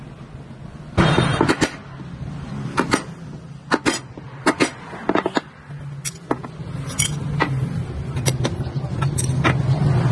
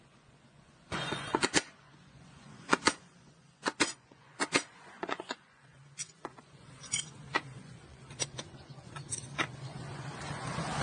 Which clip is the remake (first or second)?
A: second